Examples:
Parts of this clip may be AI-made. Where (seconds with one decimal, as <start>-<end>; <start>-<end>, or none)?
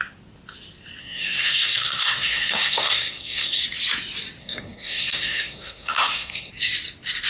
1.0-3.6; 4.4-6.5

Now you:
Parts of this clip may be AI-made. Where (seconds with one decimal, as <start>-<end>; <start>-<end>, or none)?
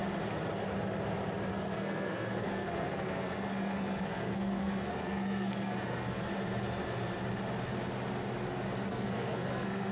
1.5-6.3; 8.9-9.9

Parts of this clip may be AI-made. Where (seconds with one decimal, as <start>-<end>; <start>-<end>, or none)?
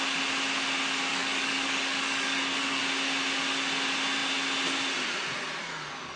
1.1-2.8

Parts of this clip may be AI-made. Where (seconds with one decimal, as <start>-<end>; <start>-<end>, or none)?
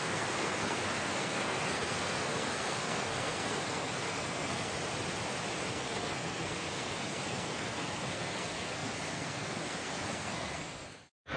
0.0-4.7; 5.7-11.4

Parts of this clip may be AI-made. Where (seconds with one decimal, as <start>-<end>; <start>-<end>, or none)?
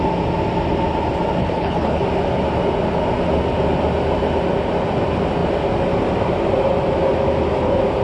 1.4-2.0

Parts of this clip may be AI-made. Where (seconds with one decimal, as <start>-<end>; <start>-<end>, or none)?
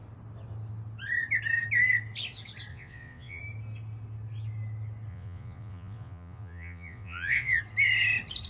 2.7-3.4; 5.1-7.6